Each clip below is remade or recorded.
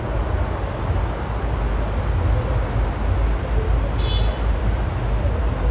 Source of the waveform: recorded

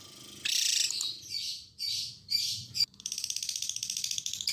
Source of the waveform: remade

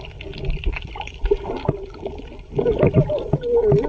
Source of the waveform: recorded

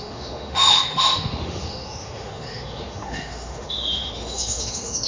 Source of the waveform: remade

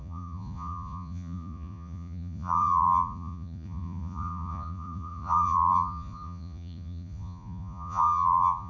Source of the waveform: remade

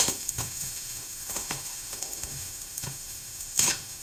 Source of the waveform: remade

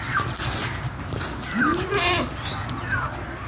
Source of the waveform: recorded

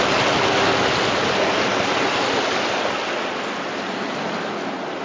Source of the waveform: recorded